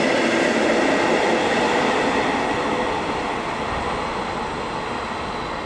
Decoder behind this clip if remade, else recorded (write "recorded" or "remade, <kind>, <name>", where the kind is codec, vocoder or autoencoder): recorded